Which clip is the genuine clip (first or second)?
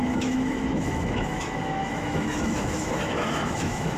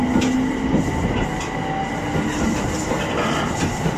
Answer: second